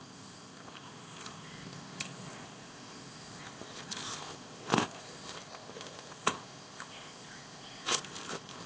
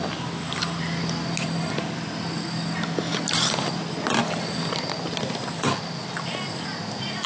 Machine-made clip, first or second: first